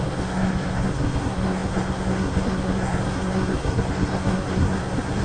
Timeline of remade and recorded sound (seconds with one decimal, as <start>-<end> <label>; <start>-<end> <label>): 0.0-5.2 remade